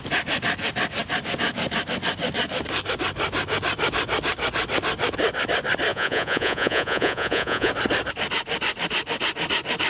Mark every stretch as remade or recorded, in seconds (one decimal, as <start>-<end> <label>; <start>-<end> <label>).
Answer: 0.0-5.9 recorded; 5.9-7.7 remade; 7.7-9.9 recorded